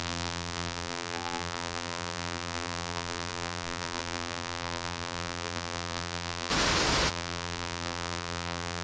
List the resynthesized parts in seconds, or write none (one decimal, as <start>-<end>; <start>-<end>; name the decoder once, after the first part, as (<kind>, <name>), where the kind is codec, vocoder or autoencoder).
0.0-6.5 (vocoder, BigVGAN v2); 7.1-8.8